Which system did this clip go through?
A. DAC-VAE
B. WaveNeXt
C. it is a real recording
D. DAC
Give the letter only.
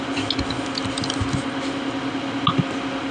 C